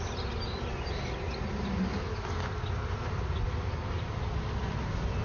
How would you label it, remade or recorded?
recorded